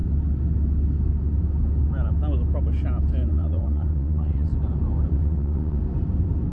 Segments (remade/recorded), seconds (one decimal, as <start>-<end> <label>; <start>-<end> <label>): 0.0-3.3 recorded; 3.3-4.5 remade; 4.5-5.1 recorded; 5.1-5.8 remade; 5.8-6.5 recorded